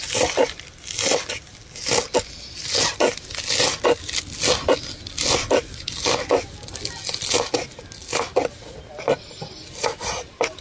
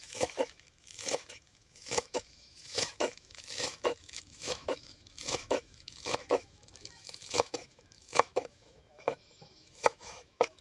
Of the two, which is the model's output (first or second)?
second